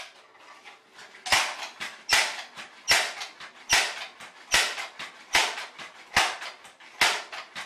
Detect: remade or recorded recorded